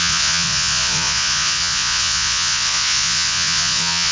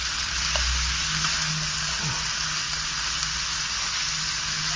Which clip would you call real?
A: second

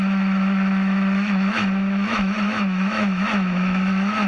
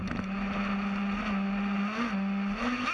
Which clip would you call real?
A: second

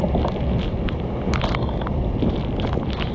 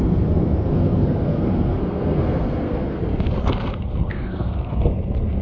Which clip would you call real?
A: first